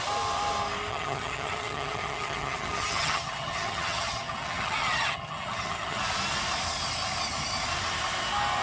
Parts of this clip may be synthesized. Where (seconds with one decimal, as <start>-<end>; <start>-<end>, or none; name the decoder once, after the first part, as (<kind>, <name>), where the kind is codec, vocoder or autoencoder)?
0.9-6.0 (vocoder, HiFi-GAN)